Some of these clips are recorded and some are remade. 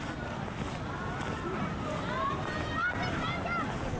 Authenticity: recorded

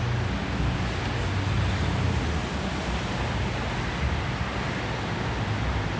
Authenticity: recorded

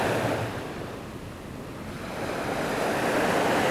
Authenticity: recorded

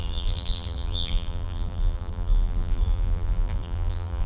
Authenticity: remade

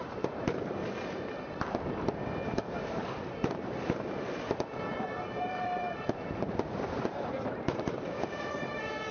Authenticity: remade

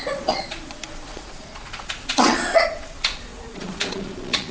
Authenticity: remade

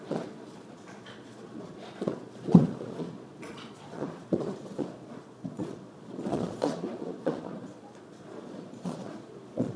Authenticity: remade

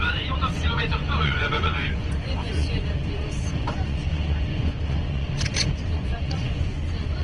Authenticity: remade